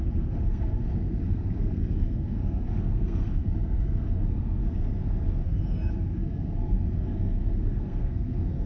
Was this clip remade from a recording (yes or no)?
yes